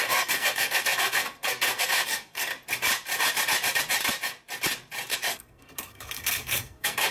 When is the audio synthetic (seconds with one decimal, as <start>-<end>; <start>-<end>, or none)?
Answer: 0.0-2.5; 5.1-7.1